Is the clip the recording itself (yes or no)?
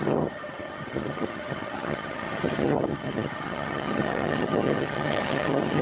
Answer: no